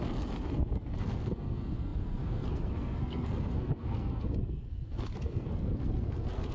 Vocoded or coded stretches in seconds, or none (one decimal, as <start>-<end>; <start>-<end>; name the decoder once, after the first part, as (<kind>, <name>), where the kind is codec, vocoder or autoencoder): 0.0-6.5 (codec, SNAC)